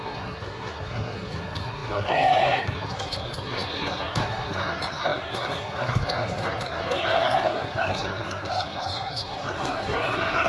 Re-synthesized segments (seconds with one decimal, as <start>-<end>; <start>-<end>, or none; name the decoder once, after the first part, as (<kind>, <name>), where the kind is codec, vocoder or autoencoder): 0.0-10.5 (codec, SNAC)